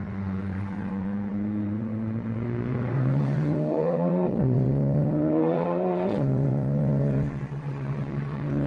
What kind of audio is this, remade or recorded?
remade